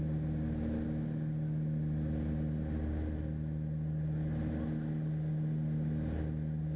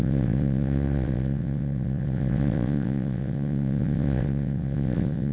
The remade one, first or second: second